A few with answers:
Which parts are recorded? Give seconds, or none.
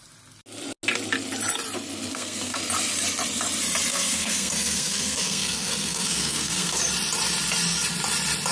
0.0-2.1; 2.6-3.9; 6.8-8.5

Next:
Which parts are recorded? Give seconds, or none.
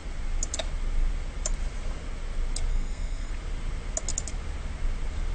0.0-2.7; 3.3-5.3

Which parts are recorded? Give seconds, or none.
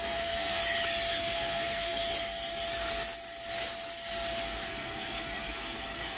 0.6-1.1; 2.0-4.7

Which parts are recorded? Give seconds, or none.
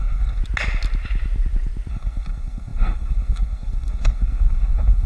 0.4-1.9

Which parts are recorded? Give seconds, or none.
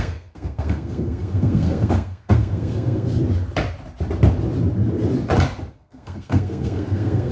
3.2-5.7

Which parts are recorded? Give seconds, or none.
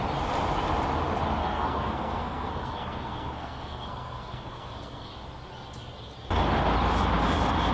0.0-1.4; 5.1-7.7